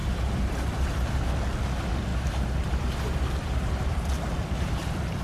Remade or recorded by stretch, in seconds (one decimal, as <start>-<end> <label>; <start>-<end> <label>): 0.0-1.3 remade; 1.3-2.1 recorded; 2.1-5.2 remade

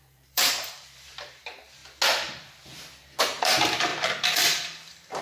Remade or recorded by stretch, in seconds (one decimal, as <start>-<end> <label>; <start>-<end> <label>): 0.0-1.8 remade; 1.8-3.2 recorded; 3.2-5.2 remade

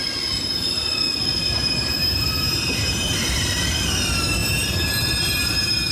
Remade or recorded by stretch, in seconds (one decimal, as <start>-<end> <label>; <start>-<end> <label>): 0.0-1.3 recorded; 1.3-3.4 remade; 3.4-4.4 recorded; 4.4-5.9 remade

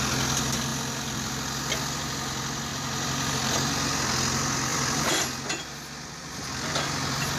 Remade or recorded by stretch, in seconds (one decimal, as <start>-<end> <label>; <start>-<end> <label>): 0.0-0.7 recorded; 0.7-1.3 remade; 1.3-2.7 recorded; 2.7-3.3 remade; 3.3-4.7 recorded; 4.7-5.2 remade; 5.2-7.4 recorded